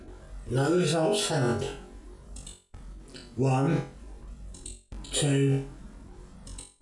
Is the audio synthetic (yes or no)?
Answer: no